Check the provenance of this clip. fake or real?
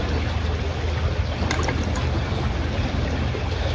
real